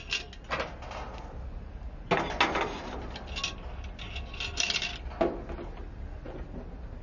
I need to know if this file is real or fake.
real